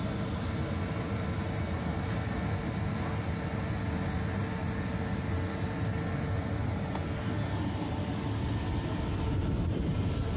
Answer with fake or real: real